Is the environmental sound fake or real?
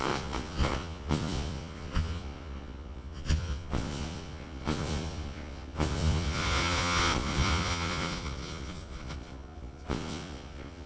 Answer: fake